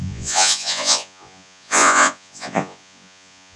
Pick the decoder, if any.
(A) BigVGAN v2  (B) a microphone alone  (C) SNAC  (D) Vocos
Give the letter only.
D